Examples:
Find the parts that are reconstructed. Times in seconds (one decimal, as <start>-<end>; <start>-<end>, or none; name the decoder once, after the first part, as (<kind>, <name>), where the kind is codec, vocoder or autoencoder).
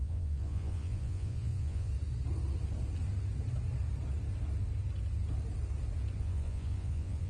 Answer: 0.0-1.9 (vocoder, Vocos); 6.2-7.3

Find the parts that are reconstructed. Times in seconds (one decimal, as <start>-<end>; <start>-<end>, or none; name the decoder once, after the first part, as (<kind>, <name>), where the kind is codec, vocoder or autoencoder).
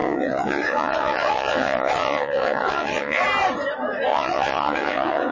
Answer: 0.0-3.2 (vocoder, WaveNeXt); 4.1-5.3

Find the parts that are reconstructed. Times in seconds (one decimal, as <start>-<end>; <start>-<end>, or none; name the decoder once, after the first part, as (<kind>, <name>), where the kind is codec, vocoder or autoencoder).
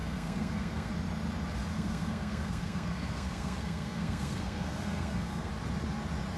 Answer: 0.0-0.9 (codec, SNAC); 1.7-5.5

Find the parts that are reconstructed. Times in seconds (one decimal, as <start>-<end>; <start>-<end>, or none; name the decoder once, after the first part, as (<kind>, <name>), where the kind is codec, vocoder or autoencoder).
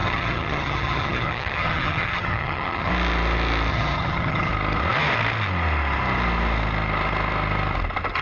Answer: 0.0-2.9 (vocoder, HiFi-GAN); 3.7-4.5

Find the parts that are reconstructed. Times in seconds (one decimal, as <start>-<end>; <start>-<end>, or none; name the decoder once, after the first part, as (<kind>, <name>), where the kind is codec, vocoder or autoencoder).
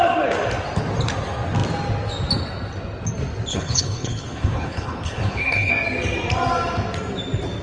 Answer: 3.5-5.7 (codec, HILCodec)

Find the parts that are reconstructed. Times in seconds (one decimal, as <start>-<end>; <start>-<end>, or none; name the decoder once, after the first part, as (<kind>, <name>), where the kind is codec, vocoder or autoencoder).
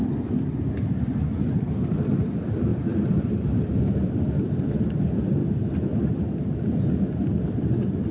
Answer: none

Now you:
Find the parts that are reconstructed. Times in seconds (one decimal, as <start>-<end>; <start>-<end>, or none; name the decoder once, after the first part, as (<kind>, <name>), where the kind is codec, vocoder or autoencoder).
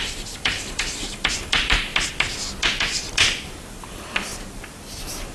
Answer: 0.0-1.9 (vocoder, BigVGAN v2); 3.7-4.3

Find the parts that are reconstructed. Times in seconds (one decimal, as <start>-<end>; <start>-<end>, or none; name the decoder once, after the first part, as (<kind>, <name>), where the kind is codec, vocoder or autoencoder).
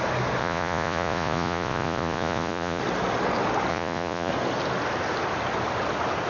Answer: 0.4-2.8 (vocoder, Vocos); 3.7-4.3